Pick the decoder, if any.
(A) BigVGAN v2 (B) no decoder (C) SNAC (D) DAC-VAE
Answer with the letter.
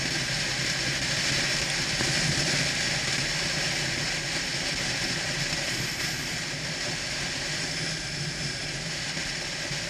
B